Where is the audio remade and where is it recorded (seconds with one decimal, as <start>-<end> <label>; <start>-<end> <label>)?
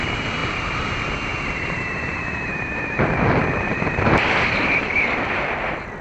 0.0-6.0 remade